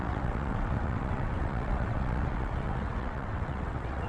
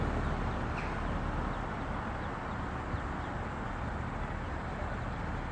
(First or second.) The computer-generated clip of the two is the first